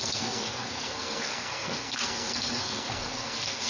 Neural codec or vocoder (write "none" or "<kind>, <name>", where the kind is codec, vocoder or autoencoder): codec, SNAC